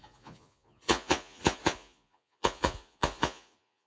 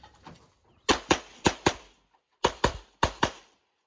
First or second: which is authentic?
second